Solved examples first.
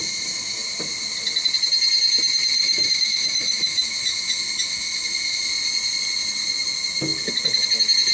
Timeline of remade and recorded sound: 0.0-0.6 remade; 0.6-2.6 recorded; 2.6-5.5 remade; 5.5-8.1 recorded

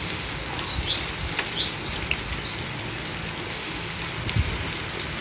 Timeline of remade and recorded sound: 0.0-0.4 remade; 0.4-3.5 recorded; 3.5-4.0 remade; 4.0-5.2 recorded